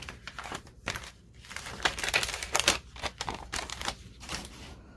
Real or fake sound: fake